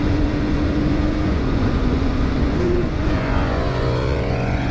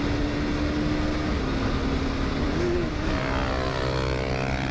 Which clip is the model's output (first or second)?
first